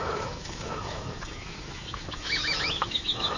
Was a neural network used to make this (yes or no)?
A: yes